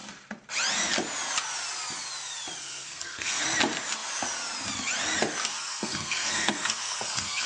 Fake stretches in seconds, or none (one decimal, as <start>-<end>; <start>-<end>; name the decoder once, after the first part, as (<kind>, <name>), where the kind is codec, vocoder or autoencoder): 2.6-3.4 (codec, SNAC); 5.5-7.5